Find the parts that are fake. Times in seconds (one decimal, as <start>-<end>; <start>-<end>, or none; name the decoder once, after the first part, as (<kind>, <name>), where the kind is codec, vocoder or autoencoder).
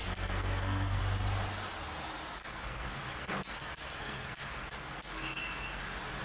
0.0-1.0 (codec, SNAC); 2.4-5.8